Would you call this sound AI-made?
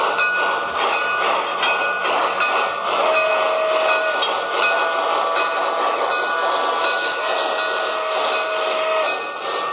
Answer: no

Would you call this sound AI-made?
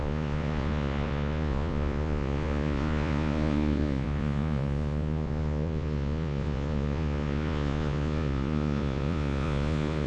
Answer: yes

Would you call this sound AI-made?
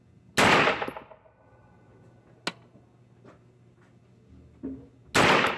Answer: no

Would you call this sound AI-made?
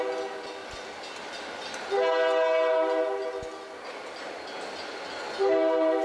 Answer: no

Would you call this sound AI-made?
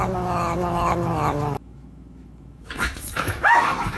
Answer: yes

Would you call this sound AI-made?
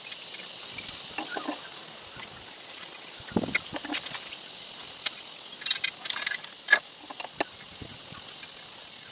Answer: no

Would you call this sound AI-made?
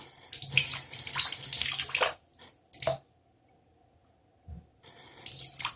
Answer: no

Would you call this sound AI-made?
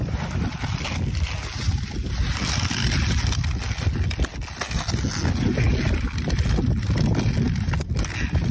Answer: no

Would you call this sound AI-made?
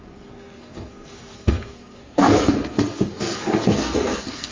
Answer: yes